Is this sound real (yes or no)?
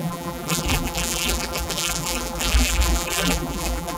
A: no